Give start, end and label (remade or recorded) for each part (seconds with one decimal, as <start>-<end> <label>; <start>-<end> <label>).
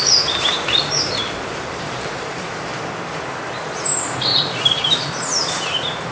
0.0-0.5 remade; 0.5-1.7 recorded; 1.7-2.7 remade; 2.7-3.8 recorded; 3.8-6.1 remade